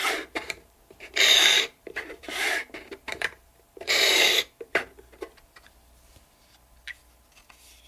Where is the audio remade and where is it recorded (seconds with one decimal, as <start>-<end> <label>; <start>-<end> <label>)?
0.0-4.4 remade; 4.4-7.9 recorded